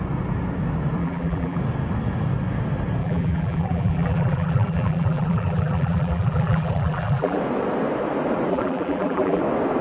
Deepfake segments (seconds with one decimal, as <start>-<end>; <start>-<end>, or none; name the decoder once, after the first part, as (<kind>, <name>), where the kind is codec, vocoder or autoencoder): 1.0-1.6 (vocoder, BigVGAN v2); 3.0-7.4; 8.5-9.4